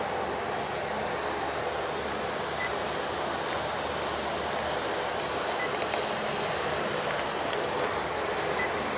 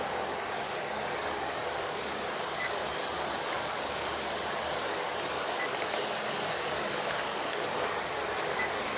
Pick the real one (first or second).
first